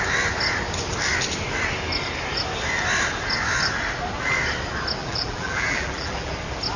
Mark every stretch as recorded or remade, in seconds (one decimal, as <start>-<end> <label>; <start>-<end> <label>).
0.0-5.0 recorded; 5.0-6.3 remade; 6.3-6.8 recorded